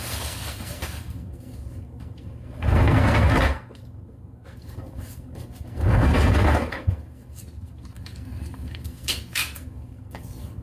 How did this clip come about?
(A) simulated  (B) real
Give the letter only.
A